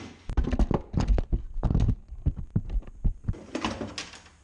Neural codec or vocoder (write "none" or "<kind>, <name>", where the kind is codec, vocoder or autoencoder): none